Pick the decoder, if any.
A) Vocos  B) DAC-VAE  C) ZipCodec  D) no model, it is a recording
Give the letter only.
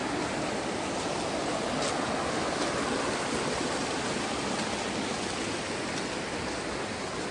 D